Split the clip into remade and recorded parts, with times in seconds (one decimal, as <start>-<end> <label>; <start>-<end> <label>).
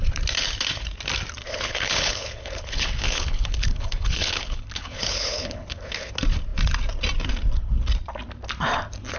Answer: 0.0-1.4 recorded; 1.4-6.1 remade; 6.1-9.2 recorded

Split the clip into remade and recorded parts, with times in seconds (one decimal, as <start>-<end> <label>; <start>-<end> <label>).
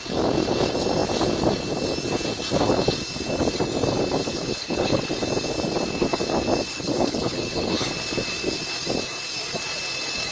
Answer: 0.0-4.2 recorded; 4.2-5.1 remade; 5.1-6.7 recorded; 6.7-7.9 remade; 7.9-10.3 recorded